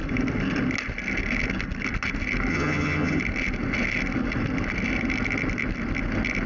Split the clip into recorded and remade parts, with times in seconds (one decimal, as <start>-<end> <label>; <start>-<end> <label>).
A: 0.0-2.5 recorded; 2.5-3.2 remade; 3.2-6.5 recorded